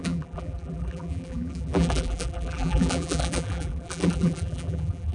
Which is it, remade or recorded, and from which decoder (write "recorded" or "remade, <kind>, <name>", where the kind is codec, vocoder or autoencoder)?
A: remade, vocoder, BigVGAN v2